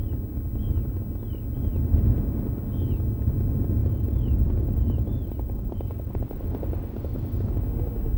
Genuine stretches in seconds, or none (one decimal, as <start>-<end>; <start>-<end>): 0.0-3.8; 7.6-8.2

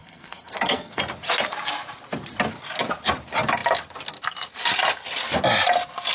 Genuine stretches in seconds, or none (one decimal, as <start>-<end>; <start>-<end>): 1.0-6.1

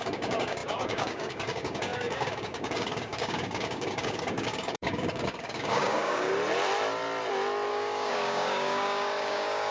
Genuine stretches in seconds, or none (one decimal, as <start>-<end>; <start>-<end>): 6.3-7.7

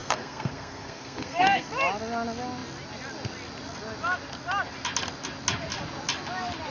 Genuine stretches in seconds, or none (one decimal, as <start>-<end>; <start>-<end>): 1.7-6.7

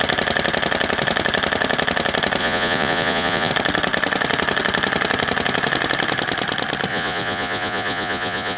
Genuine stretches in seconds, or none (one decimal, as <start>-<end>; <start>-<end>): 0.0-2.4; 3.5-6.9